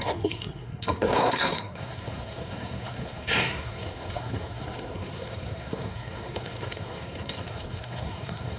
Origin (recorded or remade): remade